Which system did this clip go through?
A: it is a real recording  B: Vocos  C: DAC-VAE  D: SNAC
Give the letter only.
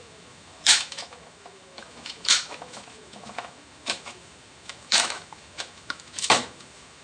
C